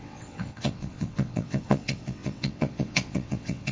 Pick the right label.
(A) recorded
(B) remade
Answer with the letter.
B